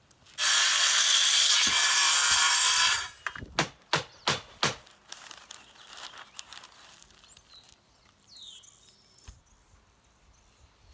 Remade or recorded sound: recorded